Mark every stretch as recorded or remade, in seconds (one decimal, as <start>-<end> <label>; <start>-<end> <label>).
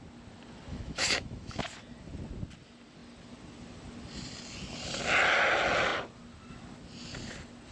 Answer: 0.0-0.7 recorded; 0.7-1.6 remade; 1.6-7.7 recorded